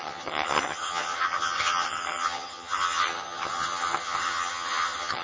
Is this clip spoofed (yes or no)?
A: yes